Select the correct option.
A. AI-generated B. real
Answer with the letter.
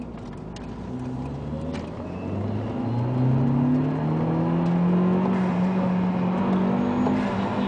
B